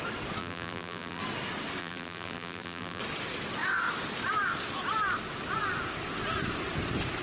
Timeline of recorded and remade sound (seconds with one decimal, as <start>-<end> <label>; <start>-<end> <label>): 0.0-0.4 recorded; 0.4-1.2 remade; 1.2-1.8 recorded; 1.8-3.0 remade; 3.0-7.2 recorded